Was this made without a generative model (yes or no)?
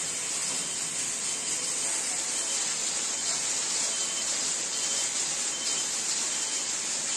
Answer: yes